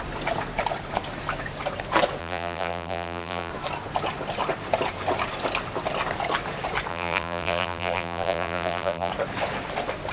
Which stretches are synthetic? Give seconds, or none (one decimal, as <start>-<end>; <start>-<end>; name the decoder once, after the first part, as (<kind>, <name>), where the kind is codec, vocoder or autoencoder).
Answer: 2.2-3.5 (vocoder, BigVGAN v2); 6.9-9.1